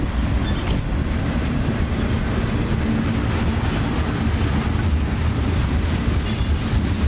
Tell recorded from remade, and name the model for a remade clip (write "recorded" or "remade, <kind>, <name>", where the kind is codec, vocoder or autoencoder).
recorded